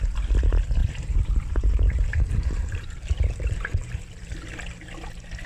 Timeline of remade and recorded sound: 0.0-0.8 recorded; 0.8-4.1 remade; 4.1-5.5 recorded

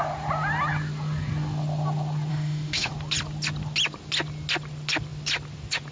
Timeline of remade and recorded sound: 0.0-2.3 recorded; 2.3-2.9 remade; 2.9-5.9 recorded

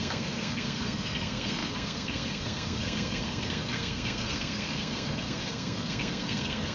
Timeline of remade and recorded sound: 0.0-6.7 remade

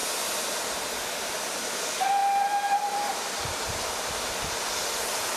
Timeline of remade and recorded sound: 0.0-0.9 remade; 0.9-2.2 recorded; 2.2-3.8 remade; 3.8-5.4 recorded